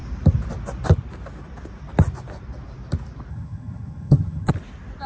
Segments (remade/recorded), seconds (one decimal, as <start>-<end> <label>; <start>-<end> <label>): 0.0-3.3 recorded; 3.3-4.5 remade; 4.5-5.1 recorded